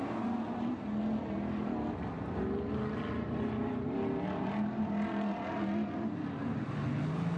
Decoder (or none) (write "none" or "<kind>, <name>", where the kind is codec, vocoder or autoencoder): none